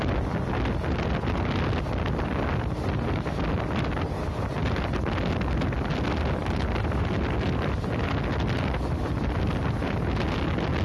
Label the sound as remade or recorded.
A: recorded